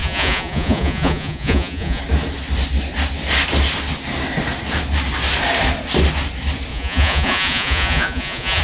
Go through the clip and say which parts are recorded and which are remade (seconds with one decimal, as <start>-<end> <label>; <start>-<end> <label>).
0.0-2.0 remade; 2.0-6.7 recorded; 6.7-8.6 remade